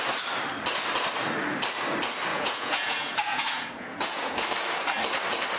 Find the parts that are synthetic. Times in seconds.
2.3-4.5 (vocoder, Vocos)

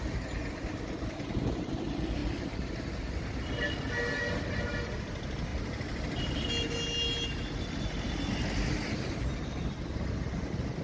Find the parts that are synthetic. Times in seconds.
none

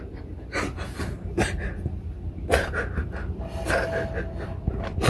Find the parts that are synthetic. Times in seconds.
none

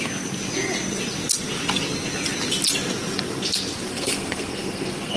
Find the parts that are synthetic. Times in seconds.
3.9-5.2 (codec, SNAC)

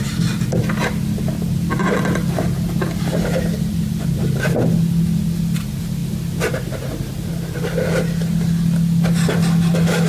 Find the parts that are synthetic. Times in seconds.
none